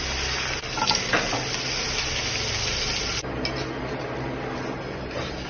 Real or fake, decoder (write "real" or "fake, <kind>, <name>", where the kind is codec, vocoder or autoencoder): real